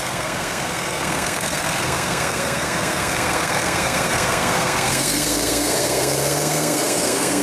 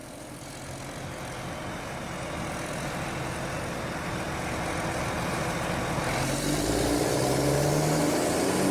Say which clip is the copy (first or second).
first